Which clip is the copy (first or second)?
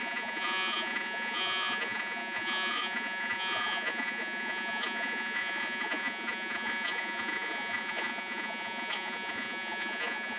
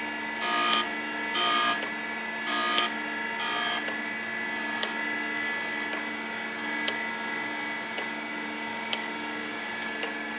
first